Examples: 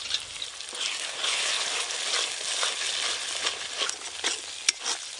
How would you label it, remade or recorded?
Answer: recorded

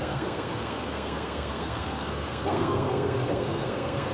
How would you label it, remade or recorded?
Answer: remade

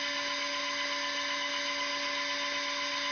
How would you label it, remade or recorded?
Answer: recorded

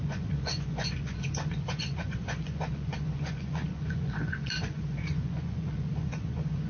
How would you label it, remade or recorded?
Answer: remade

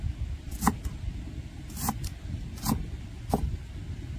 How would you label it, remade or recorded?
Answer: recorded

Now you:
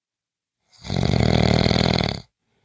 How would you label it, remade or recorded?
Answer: remade